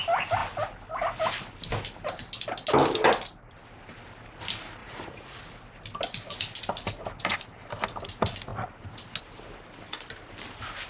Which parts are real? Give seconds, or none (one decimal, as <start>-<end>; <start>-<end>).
0.0-4.8; 5.4-10.9